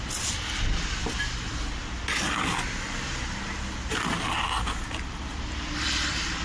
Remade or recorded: recorded